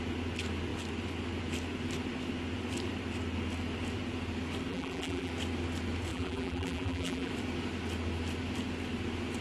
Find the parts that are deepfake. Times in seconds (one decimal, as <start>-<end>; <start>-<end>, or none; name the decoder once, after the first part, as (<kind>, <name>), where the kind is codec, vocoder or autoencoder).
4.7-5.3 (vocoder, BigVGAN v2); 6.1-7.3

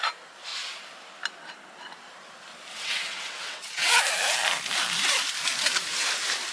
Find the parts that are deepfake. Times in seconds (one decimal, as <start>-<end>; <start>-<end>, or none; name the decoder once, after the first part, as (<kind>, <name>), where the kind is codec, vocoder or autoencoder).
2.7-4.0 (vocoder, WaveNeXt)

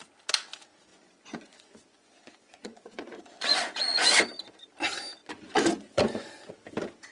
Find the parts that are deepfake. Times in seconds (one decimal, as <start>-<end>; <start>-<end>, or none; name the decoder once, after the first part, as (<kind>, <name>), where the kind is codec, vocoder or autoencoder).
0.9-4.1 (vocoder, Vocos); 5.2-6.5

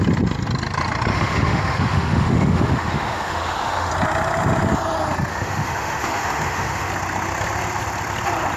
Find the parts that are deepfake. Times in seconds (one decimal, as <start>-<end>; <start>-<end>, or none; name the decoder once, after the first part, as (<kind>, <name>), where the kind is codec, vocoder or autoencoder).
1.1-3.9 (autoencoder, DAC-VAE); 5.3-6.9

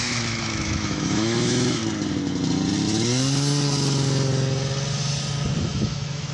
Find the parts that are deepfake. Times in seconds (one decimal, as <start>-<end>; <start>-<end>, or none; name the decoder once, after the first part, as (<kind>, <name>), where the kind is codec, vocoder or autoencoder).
0.0-1.8 (autoencoder, DAC-VAE); 5.6-6.3

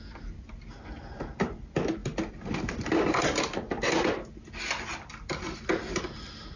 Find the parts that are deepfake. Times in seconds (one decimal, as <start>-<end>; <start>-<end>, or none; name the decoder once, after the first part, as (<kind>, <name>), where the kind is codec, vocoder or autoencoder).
none

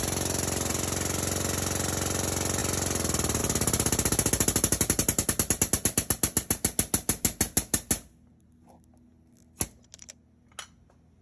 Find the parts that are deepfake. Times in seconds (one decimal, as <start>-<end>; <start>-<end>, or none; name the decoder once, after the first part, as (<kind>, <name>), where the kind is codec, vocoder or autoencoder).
none